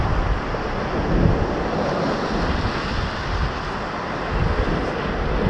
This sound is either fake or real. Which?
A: real